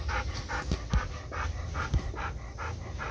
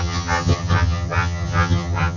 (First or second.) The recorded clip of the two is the first